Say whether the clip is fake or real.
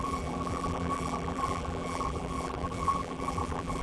fake